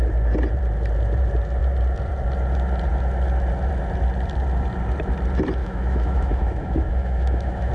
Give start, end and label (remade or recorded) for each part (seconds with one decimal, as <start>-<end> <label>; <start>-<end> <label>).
0.0-5.6 recorded; 5.6-7.7 remade